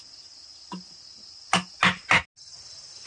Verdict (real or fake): real